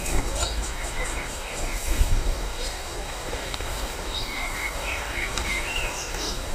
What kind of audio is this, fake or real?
fake